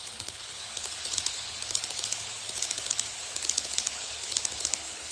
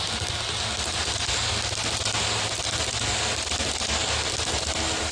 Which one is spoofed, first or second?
first